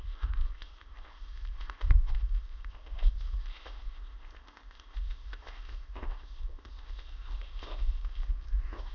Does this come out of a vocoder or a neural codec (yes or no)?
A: yes